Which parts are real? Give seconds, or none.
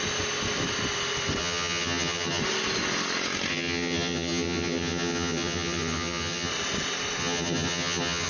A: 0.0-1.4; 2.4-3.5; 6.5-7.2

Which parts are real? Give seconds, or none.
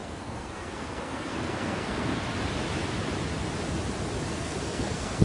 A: 2.1-4.3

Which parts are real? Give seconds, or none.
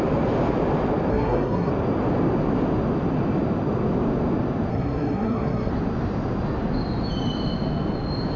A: 0.0-1.1; 1.7-4.7; 5.7-8.4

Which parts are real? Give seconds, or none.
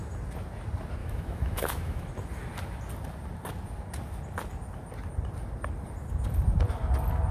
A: 0.0-1.0; 2.1-7.3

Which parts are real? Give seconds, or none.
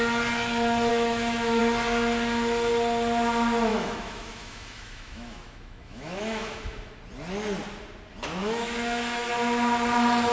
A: 0.0-0.9; 1.6-3.7; 7.0-8.4; 9.3-10.3